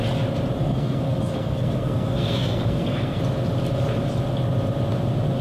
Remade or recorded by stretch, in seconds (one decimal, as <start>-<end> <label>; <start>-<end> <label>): 0.0-0.6 recorded; 0.6-3.2 remade; 3.2-5.4 recorded